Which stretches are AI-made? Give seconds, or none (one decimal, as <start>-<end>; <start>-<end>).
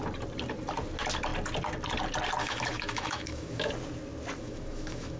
2.4-3.7; 4.4-5.2